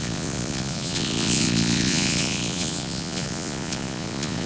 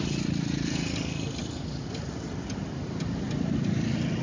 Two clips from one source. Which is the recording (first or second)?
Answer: second